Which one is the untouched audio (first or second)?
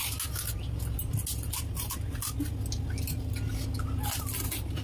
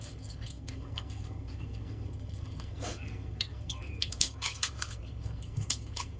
first